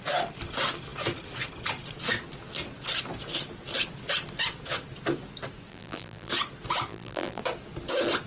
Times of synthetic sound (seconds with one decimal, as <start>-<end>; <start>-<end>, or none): 5.7-6.3; 6.9-7.4